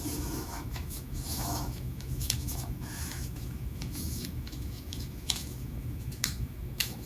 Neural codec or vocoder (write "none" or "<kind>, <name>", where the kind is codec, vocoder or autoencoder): autoencoder, DAC-VAE